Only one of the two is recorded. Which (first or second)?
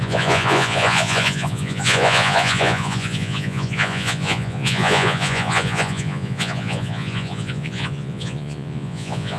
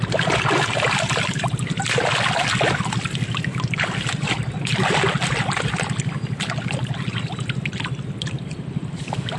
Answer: second